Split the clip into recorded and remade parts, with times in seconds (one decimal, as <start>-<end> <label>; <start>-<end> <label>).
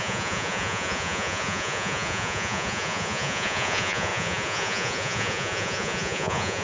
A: 0.0-6.6 remade